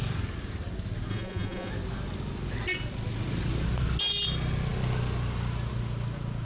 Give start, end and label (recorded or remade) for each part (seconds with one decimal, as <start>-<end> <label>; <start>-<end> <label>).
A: 0.0-1.1 recorded; 1.1-1.7 remade; 1.7-6.4 recorded